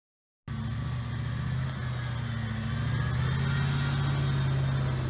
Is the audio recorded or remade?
recorded